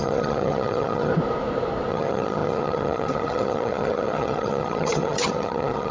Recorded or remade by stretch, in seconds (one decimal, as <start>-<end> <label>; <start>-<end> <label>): 0.0-1.1 remade; 1.1-1.9 recorded; 1.9-5.9 remade